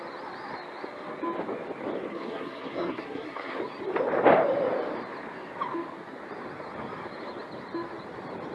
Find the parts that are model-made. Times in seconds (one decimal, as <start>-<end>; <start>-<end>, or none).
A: 2.1-3.6